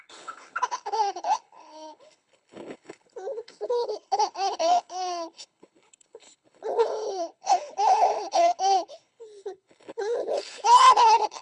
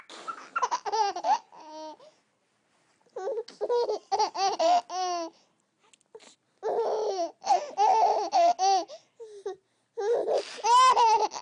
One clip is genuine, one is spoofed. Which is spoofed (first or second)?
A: first